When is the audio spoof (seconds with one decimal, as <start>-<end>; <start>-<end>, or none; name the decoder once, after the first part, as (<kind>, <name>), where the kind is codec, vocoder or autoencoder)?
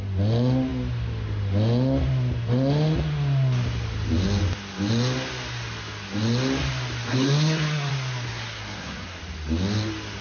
7.1-7.9 (codec, SNAC); 8.3-9.2